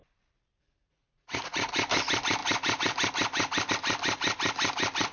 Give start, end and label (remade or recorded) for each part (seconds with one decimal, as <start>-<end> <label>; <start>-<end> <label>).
0.0-0.8 recorded; 0.8-1.7 remade; 1.7-5.1 recorded